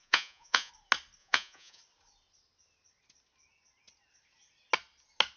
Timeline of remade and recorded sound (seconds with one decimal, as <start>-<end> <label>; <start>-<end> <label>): 0.0-0.7 remade; 0.7-1.2 recorded; 1.2-1.8 remade; 1.8-5.4 recorded